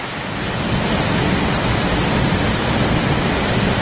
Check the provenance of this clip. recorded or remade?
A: recorded